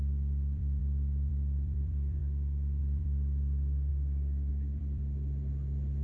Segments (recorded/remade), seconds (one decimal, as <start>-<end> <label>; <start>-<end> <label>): 0.0-2.2 remade; 2.2-2.8 recorded; 2.8-3.9 remade; 3.9-4.5 recorded; 4.5-6.0 remade